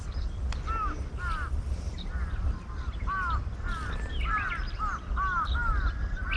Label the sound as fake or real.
real